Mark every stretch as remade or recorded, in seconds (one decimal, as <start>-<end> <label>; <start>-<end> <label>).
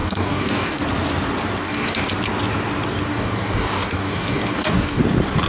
0.0-0.8 remade; 0.8-1.6 recorded; 1.6-2.1 remade; 2.1-3.1 recorded; 3.1-5.0 remade; 5.0-5.5 recorded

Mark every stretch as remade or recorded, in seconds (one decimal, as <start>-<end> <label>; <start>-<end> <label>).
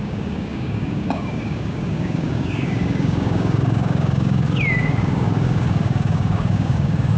0.0-7.2 remade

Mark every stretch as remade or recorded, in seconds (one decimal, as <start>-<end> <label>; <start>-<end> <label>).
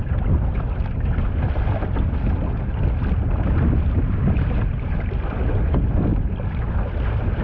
0.0-7.4 recorded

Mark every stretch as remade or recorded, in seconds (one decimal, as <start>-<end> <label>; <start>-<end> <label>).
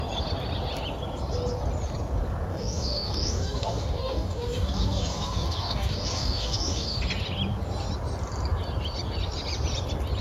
0.0-2.5 recorded; 2.5-7.0 remade; 7.0-10.2 recorded